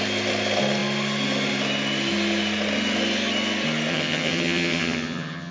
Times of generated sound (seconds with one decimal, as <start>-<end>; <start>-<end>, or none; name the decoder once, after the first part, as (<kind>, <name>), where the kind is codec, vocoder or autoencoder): 3.9-5.5 (vocoder, HiFi-GAN)